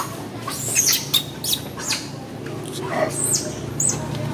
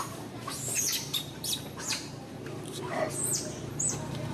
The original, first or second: first